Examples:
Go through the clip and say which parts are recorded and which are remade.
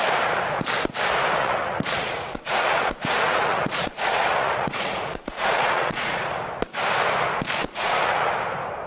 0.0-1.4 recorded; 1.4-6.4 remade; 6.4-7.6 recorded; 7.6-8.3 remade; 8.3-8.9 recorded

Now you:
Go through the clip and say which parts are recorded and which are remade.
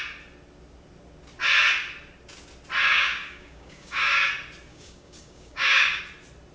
0.0-2.9 recorded; 2.9-4.3 remade; 4.3-4.7 recorded; 4.7-6.0 remade; 6.0-6.5 recorded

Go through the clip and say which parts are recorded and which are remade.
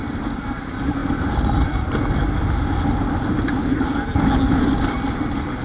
0.0-5.6 recorded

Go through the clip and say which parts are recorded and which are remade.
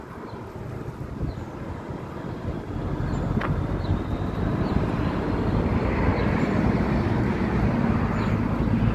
0.0-8.9 recorded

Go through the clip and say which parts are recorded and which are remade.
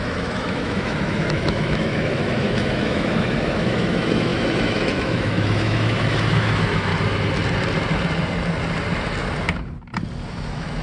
0.0-6.9 remade; 6.9-10.3 recorded; 10.3-10.8 remade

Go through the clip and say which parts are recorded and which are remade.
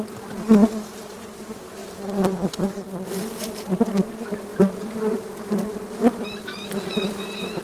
0.0-1.8 recorded; 1.8-2.7 remade; 2.7-4.5 recorded; 4.5-5.5 remade; 5.5-7.6 recorded